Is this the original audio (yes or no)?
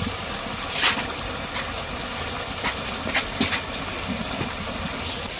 yes